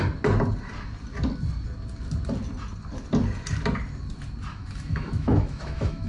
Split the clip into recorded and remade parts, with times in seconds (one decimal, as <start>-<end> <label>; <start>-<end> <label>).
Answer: 0.0-4.5 recorded; 4.5-6.1 remade